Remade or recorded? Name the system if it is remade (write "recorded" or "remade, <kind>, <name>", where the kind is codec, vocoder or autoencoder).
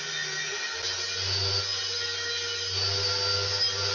recorded